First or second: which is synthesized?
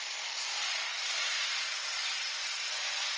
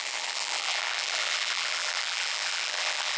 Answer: second